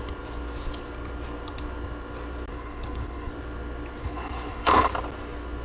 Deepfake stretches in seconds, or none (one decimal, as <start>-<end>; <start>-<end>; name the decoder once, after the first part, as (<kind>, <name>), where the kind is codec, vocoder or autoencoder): 2.5-3.3 (codec, HILCodec); 4.0-4.9